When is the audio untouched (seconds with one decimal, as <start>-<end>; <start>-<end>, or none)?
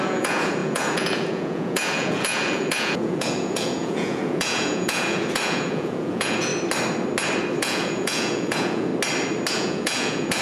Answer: 6.5-7.6; 8.9-9.5